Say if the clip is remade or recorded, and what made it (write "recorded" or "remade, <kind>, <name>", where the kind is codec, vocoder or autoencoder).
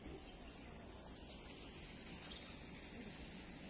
remade, vocoder, Vocos